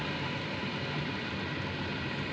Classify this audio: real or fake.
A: real